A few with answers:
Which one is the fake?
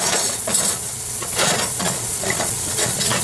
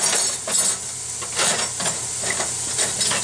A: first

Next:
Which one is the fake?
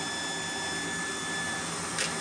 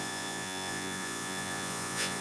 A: second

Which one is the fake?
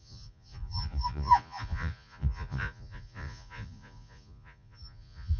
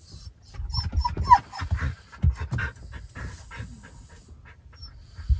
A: first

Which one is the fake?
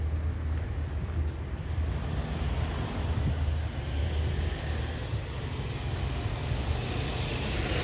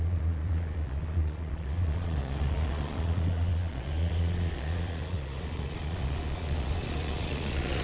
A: second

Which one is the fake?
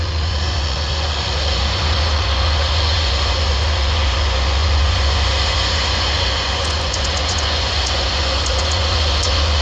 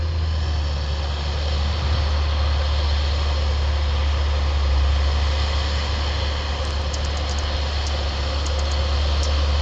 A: first